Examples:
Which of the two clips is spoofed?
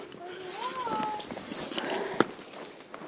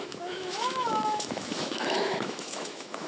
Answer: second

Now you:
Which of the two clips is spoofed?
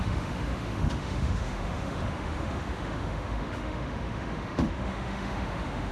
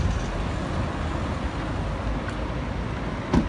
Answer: first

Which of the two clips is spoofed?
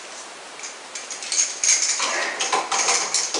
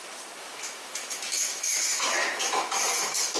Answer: second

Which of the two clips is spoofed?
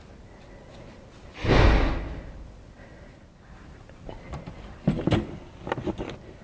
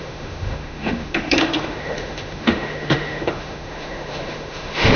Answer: second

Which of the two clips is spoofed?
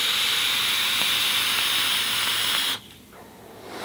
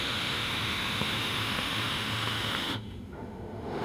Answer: second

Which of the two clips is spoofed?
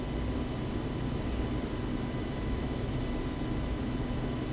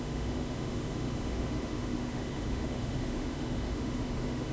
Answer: second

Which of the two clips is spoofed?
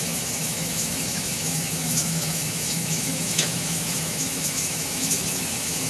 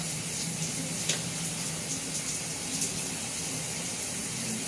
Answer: first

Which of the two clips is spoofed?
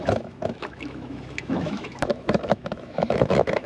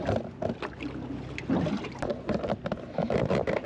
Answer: first